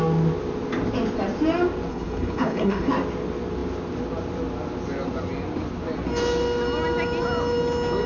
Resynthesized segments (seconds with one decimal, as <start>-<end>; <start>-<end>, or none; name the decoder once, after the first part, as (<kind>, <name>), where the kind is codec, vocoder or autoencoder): 1.9-2.9 (codec, HILCodec)